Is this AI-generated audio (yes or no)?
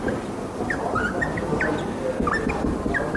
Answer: no